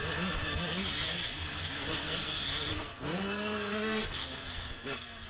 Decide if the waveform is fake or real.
fake